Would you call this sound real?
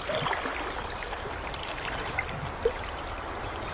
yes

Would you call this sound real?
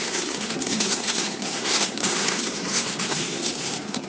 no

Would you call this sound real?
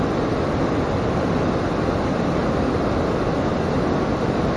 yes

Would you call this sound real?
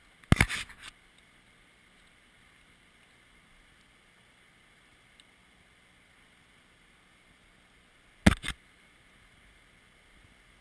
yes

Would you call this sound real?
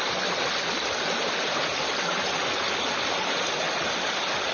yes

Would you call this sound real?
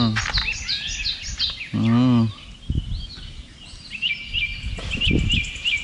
yes